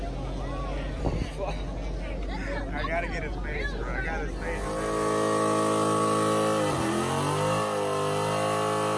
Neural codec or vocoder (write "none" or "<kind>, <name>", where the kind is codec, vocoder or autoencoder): none